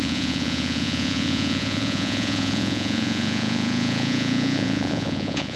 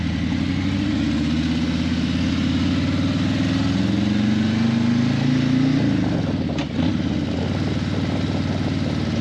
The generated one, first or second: first